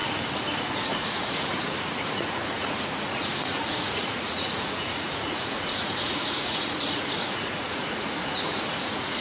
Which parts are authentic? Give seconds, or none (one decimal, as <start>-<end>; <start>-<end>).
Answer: 0.0-0.7